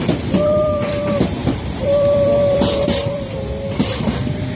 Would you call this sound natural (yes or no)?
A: no